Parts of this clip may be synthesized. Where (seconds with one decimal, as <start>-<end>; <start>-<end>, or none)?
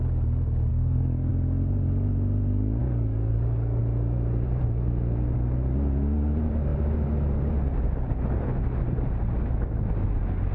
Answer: 0.7-1.3; 2.8-3.8